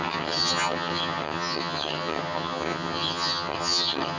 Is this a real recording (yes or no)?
no